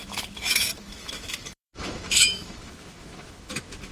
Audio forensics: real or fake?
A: fake